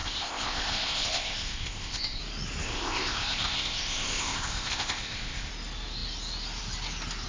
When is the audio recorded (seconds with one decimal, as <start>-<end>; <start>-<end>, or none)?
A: 2.2-2.6; 5.5-7.3